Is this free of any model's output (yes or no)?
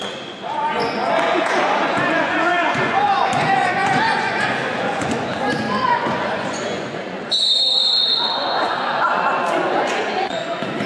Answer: no